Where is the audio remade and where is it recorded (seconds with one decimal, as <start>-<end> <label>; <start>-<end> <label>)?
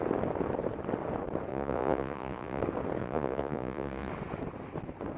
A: 0.0-1.5 recorded; 1.5-2.6 remade; 2.6-3.0 recorded; 3.0-4.1 remade; 4.1-5.2 recorded